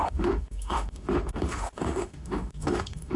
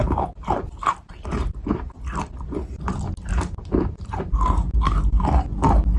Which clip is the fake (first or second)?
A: first